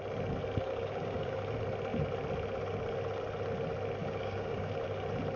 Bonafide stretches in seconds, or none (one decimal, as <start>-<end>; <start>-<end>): 0.0-0.7; 1.4-4.0; 4.7-5.4